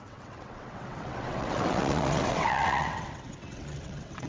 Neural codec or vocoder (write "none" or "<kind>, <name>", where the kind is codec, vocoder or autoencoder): vocoder, WaveNeXt